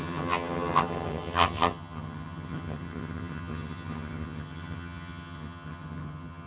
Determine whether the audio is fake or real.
fake